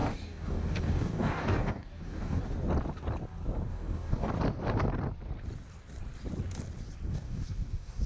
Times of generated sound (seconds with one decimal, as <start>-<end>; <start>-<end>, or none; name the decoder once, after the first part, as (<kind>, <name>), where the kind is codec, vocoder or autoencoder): 0.0-2.4 (codec, DAC); 3.7-4.3; 7.1-8.1